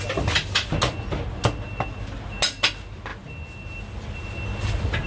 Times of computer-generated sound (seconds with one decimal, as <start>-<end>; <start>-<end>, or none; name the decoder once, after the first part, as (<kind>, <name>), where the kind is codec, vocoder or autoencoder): none